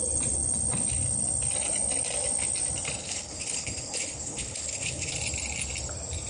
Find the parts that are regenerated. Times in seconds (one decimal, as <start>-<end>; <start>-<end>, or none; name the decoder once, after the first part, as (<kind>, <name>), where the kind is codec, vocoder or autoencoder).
3.0-5.1 (codec, HILCodec)